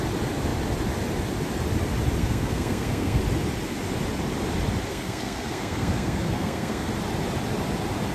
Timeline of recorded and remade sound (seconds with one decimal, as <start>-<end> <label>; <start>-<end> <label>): 0.0-2.2 recorded; 2.2-3.2 remade; 3.2-4.9 recorded; 4.9-6.9 remade; 6.9-8.1 recorded